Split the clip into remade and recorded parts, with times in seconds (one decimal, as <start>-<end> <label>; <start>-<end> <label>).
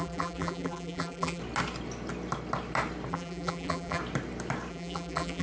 0.0-1.4 remade; 1.4-3.1 recorded; 3.1-4.0 remade; 4.0-4.7 recorded; 4.7-5.4 remade